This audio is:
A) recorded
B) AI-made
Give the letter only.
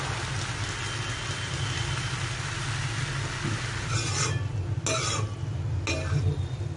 A